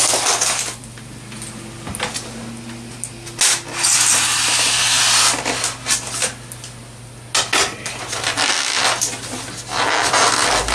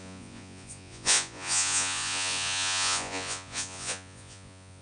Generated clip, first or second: second